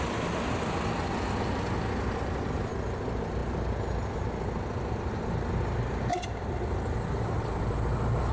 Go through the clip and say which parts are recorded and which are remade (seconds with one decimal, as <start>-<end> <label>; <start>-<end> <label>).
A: 0.0-8.3 recorded